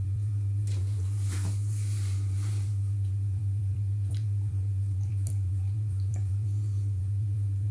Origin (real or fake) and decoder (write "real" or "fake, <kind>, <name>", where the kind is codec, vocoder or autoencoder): fake, vocoder, BigVGAN v2